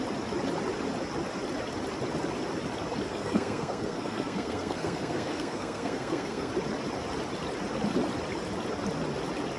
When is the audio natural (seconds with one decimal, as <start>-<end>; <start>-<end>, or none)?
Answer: 0.0-3.1; 6.5-9.6